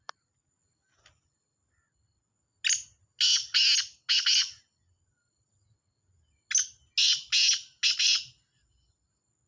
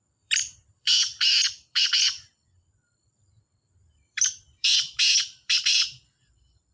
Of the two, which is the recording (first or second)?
first